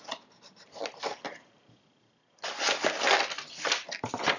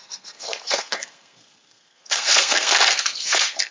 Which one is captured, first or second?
first